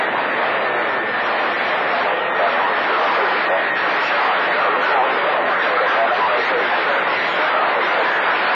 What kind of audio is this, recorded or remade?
recorded